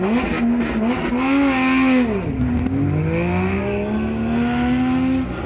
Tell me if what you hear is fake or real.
real